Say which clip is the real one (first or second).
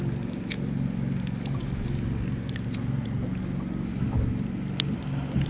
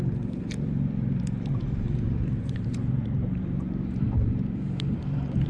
first